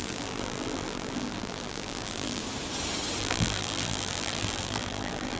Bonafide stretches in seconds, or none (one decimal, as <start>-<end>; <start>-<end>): 2.4-3.2